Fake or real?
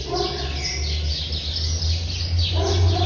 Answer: real